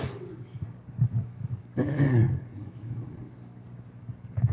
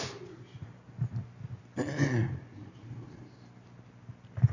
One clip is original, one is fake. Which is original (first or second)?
second